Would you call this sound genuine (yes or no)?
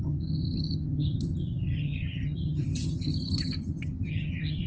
no